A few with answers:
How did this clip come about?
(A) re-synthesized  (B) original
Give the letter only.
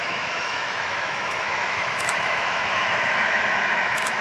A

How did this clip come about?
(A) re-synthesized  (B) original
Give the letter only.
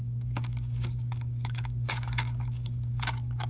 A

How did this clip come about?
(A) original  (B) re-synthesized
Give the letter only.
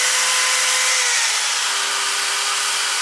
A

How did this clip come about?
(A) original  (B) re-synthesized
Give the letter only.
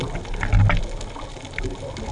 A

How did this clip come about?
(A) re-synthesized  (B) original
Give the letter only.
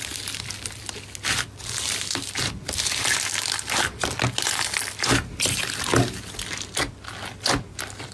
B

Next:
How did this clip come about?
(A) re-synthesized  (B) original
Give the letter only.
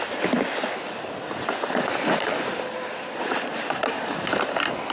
B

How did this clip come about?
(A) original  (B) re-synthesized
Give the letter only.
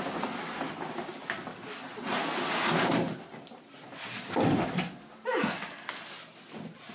A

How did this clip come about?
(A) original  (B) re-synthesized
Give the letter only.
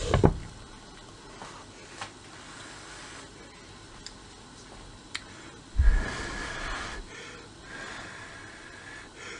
A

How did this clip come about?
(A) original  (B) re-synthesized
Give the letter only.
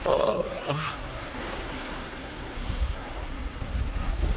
B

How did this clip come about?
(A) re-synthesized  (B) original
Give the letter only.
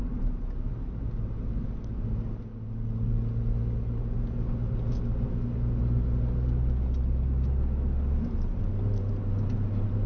B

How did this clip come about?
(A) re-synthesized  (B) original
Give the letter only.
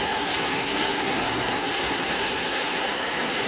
A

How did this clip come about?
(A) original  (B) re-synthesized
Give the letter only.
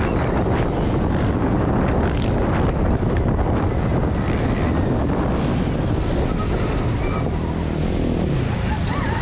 A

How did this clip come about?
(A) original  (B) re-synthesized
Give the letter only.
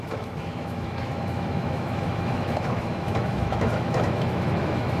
B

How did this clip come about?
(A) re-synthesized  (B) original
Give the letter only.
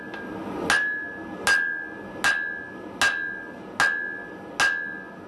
B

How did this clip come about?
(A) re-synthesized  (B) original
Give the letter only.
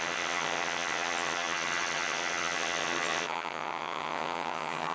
A